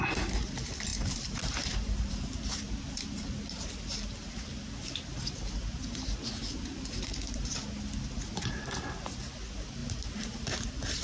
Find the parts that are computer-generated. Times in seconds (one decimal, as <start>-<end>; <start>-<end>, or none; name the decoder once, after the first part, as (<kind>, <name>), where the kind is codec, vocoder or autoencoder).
0.9-2.2 (vocoder, BigVGAN v2); 9.8-10.5